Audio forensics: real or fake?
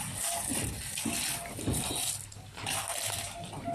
real